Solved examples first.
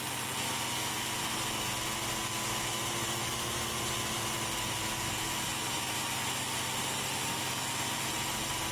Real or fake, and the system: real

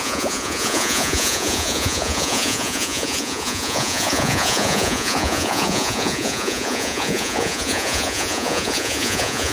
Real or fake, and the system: fake, vocoder, Vocos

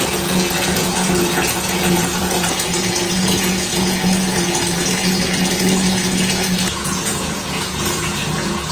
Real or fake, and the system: fake, vocoder, Vocos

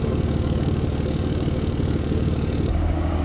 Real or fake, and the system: fake, codec, DAC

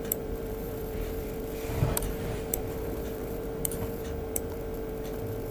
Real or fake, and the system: fake, vocoder, BigVGAN v2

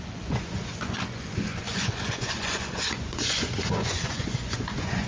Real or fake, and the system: fake, vocoder, Vocos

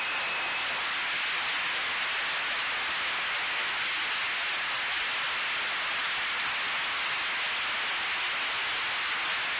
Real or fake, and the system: real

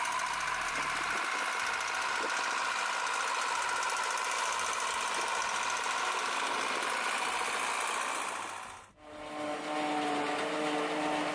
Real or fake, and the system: real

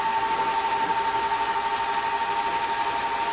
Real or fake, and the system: real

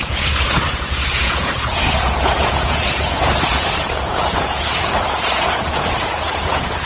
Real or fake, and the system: fake, vocoder, Vocos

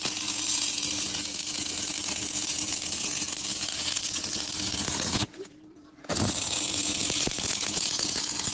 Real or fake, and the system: fake, vocoder, Vocos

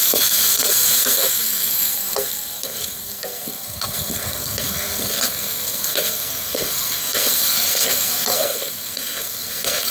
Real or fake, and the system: fake, codec, SNAC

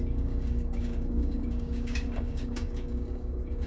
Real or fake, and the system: fake, codec, DAC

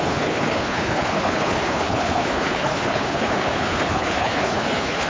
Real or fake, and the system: fake, codec, HILCodec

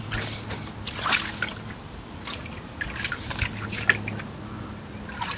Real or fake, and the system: real